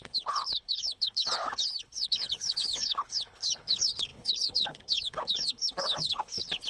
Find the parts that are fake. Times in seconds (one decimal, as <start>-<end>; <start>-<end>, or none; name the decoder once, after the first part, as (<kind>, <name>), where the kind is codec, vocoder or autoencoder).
0.0-6.7 (codec, HILCodec)